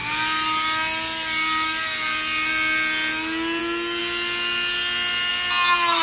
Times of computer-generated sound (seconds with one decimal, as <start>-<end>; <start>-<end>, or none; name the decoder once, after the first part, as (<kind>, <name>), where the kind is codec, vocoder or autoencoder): none